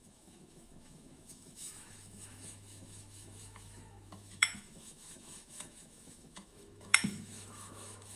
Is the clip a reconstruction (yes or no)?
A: yes